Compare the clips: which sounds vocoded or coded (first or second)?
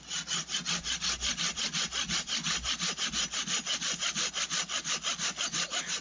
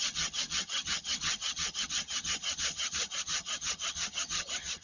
second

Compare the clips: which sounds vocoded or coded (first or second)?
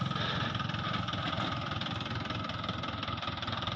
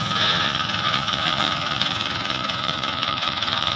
second